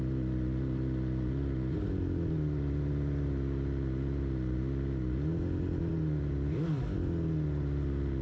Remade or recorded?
recorded